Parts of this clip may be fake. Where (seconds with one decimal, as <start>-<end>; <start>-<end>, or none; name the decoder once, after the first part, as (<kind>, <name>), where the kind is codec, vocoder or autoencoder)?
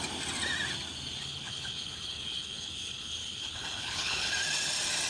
1.2-4.3 (codec, HILCodec)